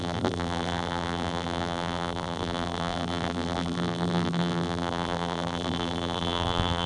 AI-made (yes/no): yes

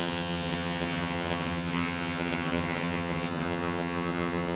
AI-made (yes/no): yes